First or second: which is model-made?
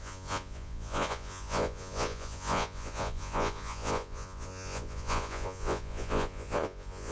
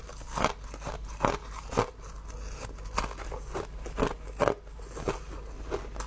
first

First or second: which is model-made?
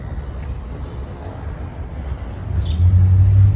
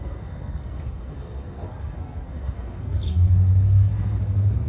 second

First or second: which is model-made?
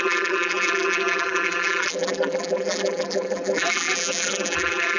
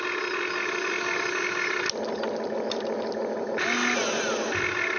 first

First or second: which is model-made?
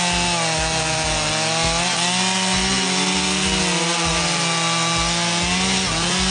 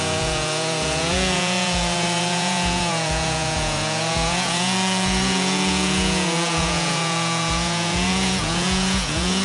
second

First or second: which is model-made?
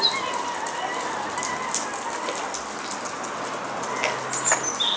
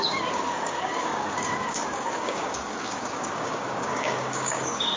second